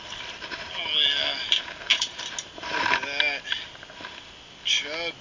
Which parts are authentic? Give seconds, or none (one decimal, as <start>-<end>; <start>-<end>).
0.0-5.2